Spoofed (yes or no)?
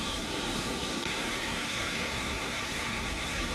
yes